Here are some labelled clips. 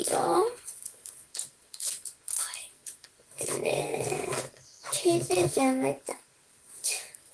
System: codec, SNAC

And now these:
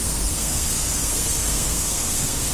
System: codec, SNAC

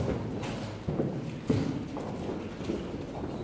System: none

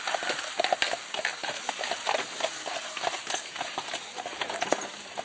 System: none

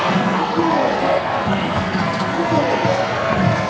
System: codec, SNAC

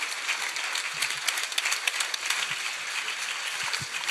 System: none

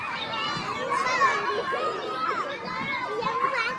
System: none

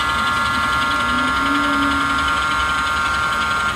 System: none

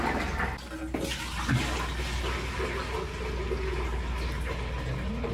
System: none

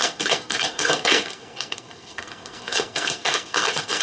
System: codec, SNAC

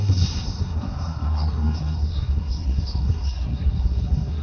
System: codec, SNAC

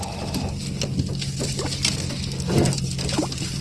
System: none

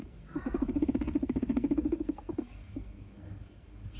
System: codec, SNAC